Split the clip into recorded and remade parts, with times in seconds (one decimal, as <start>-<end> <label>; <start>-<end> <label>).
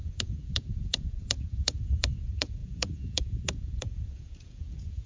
0.0-5.1 remade